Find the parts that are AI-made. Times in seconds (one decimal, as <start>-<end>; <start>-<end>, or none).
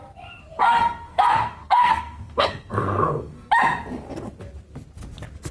0.6-3.5